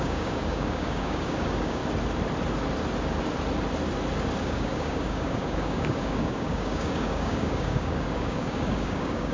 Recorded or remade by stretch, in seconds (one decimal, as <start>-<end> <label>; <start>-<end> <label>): 0.0-1.8 remade; 1.8-4.4 recorded; 4.4-9.3 remade